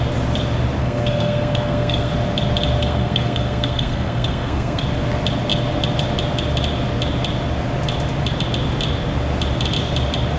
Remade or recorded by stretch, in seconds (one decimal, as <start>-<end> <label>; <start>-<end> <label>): 0.0-0.8 recorded; 0.8-2.1 remade; 2.1-2.8 recorded; 2.8-4.8 remade; 4.8-10.4 recorded